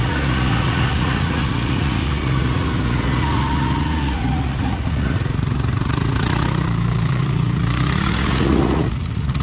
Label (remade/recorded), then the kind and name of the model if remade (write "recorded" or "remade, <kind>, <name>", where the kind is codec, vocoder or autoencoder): remade, vocoder, Vocos